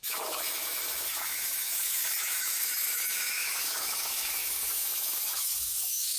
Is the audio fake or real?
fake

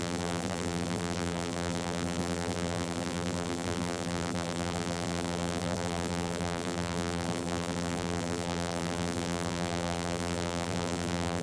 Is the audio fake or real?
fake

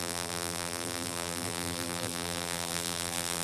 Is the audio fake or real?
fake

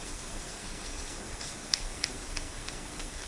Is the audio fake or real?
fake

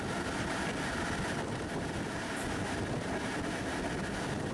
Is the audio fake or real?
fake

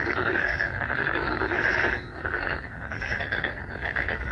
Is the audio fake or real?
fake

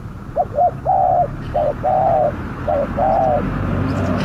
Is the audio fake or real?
fake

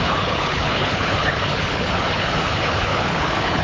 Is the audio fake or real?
fake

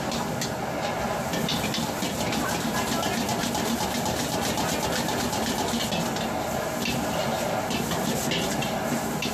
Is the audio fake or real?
real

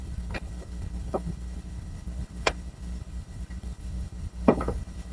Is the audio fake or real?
fake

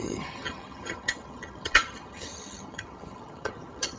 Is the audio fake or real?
fake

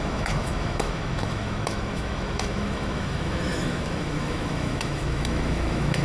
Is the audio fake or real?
fake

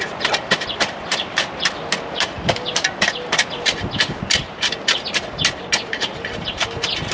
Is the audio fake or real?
real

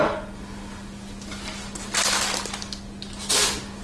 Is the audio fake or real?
real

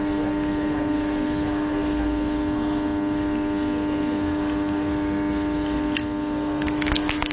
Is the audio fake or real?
real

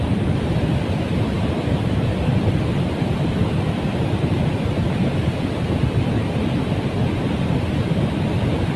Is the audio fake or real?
fake